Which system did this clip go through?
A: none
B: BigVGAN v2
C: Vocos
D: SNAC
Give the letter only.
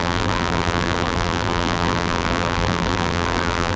B